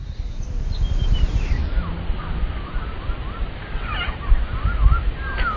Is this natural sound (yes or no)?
yes